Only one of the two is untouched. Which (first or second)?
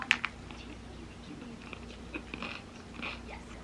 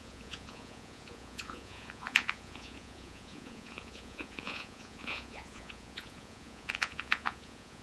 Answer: first